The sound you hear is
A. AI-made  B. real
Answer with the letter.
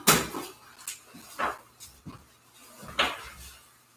B